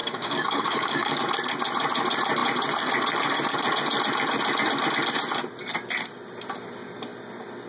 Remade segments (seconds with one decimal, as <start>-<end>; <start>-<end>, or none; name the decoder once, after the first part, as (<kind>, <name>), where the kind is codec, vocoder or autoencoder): 0.0-1.2 (codec, DAC)